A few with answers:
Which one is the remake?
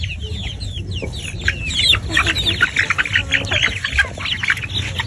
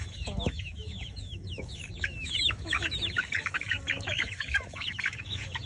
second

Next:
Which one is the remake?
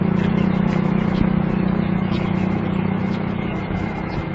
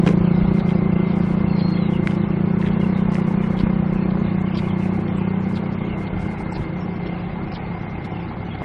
first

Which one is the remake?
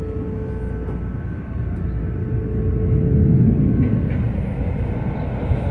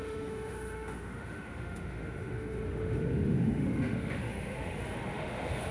second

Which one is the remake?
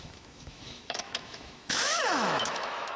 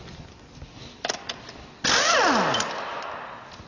first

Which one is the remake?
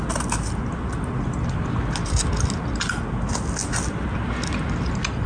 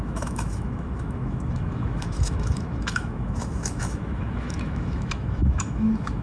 second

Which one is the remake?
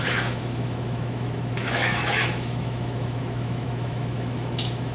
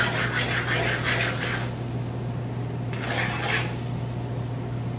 first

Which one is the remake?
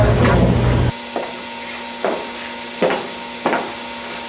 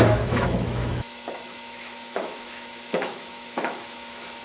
second